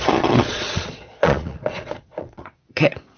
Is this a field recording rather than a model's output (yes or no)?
no